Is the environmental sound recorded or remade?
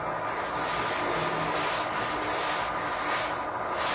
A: recorded